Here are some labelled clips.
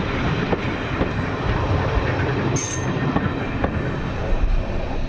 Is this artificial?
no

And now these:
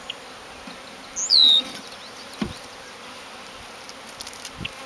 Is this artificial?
no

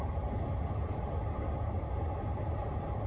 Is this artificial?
no